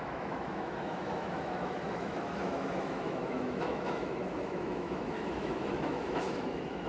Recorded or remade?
remade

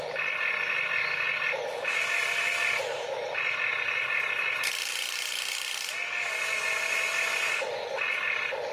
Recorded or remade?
recorded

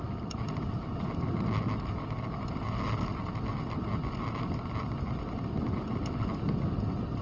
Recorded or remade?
recorded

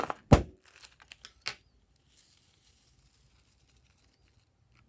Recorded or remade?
recorded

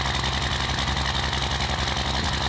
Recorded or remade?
recorded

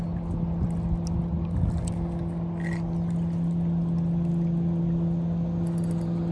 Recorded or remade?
recorded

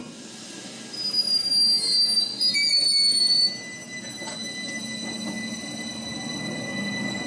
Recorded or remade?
recorded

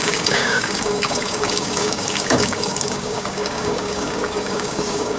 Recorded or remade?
remade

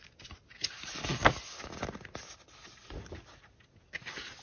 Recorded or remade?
recorded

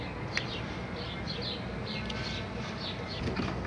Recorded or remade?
recorded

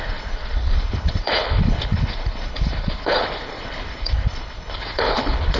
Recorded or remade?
remade